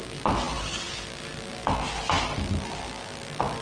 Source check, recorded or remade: recorded